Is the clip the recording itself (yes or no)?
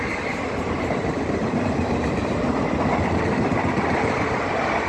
yes